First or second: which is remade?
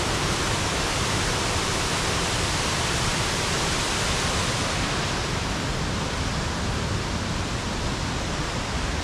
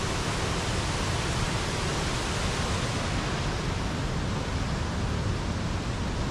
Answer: first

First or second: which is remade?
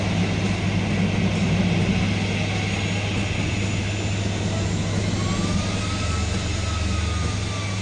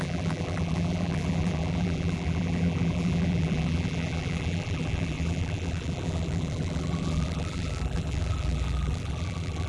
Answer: second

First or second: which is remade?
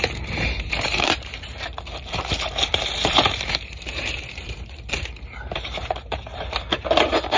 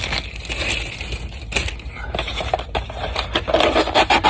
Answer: first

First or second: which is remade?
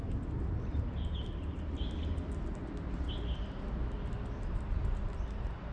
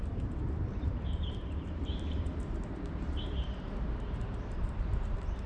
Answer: second